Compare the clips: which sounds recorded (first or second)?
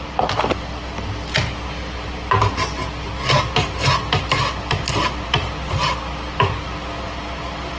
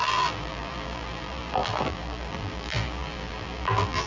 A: first